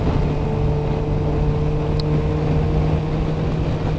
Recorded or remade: recorded